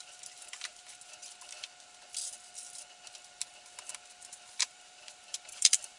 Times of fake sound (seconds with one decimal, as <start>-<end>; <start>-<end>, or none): 0.0-1.2; 4.3-6.0